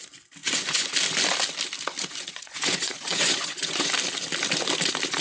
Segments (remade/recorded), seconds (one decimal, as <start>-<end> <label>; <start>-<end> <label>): 0.0-0.4 recorded; 0.4-0.9 remade; 0.9-2.0 recorded; 2.0-3.9 remade; 3.9-5.2 recorded